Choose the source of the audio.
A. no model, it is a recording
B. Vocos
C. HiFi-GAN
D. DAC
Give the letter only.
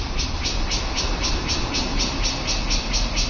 A